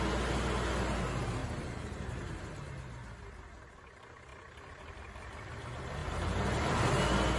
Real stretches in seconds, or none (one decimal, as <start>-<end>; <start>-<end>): 0.0-1.4; 2.4-6.0; 6.9-7.4